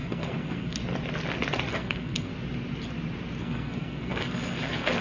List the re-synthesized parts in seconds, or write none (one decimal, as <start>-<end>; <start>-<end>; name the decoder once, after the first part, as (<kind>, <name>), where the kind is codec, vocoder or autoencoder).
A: 0.0-0.8 (codec, SNAC); 1.7-2.3; 3.4-5.0